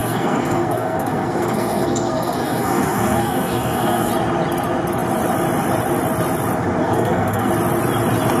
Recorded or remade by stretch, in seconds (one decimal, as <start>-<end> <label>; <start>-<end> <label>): 0.0-4.1 remade; 4.1-6.8 recorded; 6.8-7.5 remade; 7.5-8.4 recorded

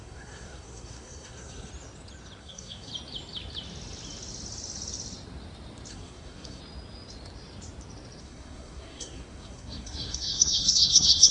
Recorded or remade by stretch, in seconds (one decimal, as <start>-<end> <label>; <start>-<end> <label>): 0.0-1.7 remade; 1.7-2.4 recorded; 2.4-2.9 remade; 2.9-5.9 recorded; 5.9-6.6 remade; 6.6-8.2 recorded; 8.2-11.3 remade